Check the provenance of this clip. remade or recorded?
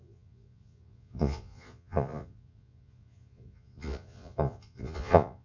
remade